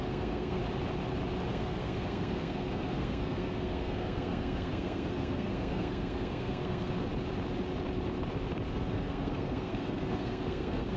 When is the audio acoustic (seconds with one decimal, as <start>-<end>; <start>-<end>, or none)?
0.6-1.5; 7.1-8.7